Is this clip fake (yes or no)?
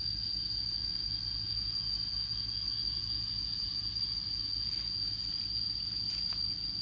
no